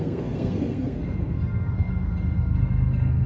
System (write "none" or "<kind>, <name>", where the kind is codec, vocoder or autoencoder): codec, SNAC